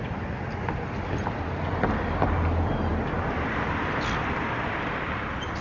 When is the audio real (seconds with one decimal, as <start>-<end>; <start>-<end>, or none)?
none